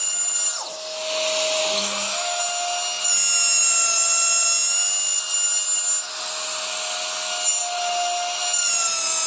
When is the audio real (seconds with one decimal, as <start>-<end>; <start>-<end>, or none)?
0.0-1.6; 2.4-9.3